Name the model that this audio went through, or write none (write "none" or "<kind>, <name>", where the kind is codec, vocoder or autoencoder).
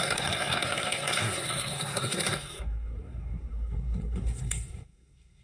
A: codec, SNAC